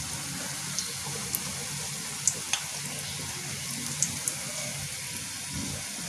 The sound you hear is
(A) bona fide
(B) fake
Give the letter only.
A